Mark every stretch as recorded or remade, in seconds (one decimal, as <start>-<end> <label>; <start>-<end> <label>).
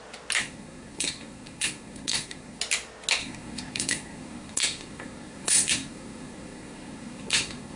0.0-0.4 recorded; 0.4-2.6 remade; 2.6-3.2 recorded; 3.2-7.8 remade